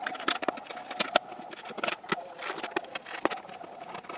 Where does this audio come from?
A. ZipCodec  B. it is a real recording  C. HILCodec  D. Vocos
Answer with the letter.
B